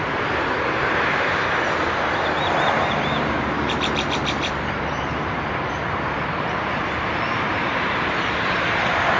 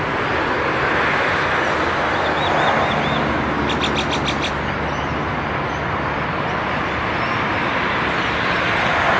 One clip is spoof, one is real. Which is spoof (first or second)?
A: first